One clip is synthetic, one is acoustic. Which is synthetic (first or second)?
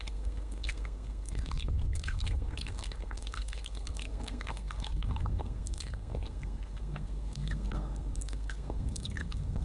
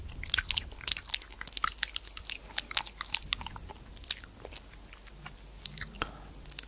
first